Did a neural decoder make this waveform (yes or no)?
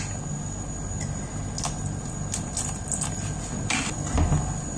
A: no